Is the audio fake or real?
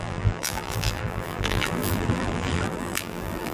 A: fake